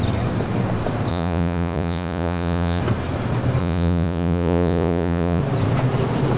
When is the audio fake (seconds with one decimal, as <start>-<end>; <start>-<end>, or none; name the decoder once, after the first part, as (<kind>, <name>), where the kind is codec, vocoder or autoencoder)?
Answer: 1.1-2.8 (vocoder, Vocos); 3.6-5.4